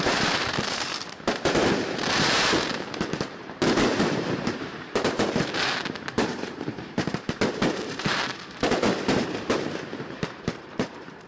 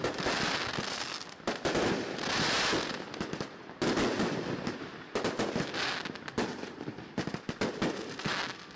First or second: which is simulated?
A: first